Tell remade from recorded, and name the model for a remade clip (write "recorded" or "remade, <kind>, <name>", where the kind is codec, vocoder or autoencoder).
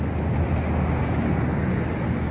recorded